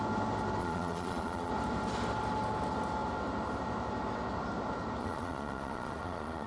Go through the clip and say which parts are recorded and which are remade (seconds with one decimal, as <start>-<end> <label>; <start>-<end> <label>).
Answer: 0.0-0.6 recorded; 0.6-1.5 remade; 1.5-5.0 recorded; 5.0-6.5 remade